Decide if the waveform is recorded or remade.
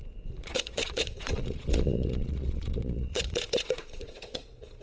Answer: remade